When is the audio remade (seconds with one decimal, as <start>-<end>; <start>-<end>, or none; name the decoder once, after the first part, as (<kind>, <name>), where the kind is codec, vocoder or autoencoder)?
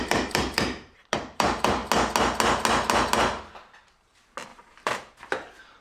0.0-1.8 (vocoder, BigVGAN v2); 3.8-5.8